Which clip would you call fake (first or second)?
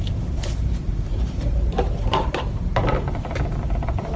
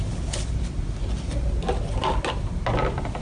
first